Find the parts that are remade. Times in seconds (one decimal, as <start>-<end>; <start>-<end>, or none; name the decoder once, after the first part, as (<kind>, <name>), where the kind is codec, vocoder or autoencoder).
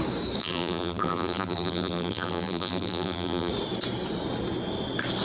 0.4-3.5 (vocoder, BigVGAN v2)